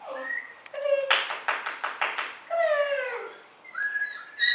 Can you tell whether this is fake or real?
real